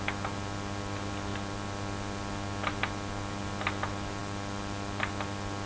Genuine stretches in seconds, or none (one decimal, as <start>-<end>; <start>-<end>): 0.0-5.7